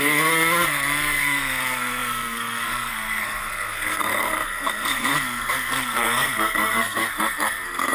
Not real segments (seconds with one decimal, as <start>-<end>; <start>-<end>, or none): 0.0-7.9